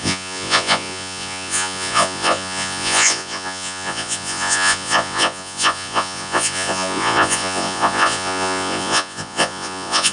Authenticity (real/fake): fake